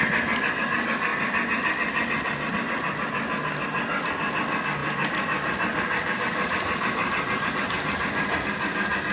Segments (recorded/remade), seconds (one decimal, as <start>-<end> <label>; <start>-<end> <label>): 0.0-4.8 recorded; 4.8-7.5 remade; 7.5-9.1 recorded